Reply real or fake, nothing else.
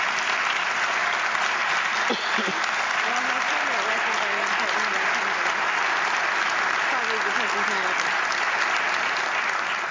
real